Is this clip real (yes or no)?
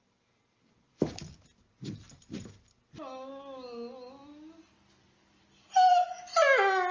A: yes